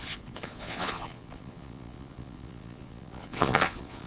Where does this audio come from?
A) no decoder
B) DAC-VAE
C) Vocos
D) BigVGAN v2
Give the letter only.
C